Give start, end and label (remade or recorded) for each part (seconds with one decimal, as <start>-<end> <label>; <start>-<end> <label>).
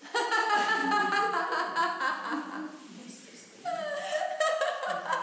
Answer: 0.0-0.8 recorded; 0.8-1.4 remade; 1.4-3.0 recorded; 3.0-3.8 remade; 3.8-5.2 recorded